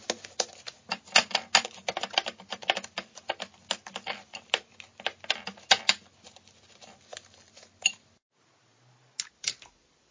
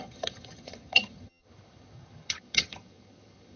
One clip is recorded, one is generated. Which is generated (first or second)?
second